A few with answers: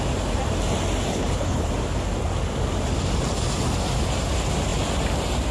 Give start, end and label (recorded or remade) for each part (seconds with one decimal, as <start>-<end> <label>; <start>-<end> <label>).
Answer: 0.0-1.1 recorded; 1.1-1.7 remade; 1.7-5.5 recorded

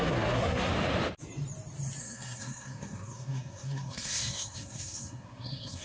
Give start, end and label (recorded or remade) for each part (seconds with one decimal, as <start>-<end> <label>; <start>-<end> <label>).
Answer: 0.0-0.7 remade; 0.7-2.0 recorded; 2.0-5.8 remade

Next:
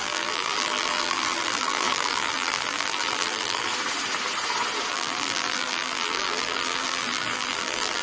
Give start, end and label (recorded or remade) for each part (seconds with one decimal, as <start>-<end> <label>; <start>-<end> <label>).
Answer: 0.0-3.7 remade; 3.7-4.9 recorded; 4.9-8.0 remade